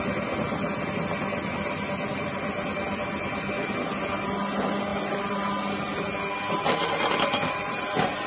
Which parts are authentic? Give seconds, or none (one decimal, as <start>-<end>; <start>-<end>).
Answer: 0.0-8.3